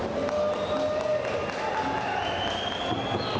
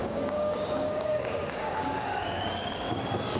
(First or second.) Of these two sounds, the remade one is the second